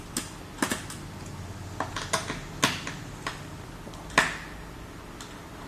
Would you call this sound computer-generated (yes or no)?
no